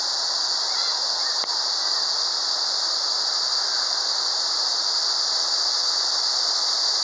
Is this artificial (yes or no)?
no